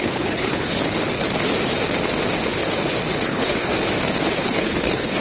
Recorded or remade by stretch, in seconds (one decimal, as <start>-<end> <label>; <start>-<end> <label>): 0.0-0.8 remade; 0.8-3.1 recorded; 3.1-3.7 remade; 3.7-4.4 recorded; 4.4-5.2 remade